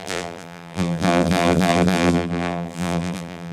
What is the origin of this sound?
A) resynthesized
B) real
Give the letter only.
A